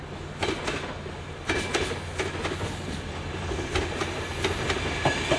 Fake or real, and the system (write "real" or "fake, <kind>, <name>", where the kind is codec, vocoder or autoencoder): real